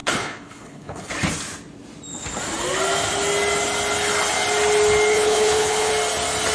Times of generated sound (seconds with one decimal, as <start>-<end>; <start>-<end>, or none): 0.0-1.1; 5.1-5.9